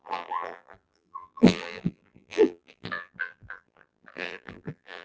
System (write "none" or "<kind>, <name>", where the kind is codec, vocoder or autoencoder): vocoder, BigVGAN v2